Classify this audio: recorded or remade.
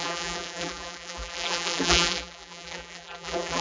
remade